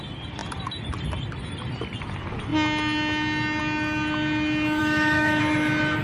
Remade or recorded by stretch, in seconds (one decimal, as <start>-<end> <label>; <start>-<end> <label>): 0.0-4.8 recorded; 4.8-5.4 remade; 5.4-6.0 recorded